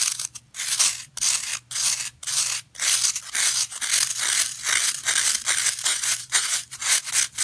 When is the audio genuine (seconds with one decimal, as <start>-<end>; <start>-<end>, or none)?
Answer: 0.0-5.9; 7.0-7.4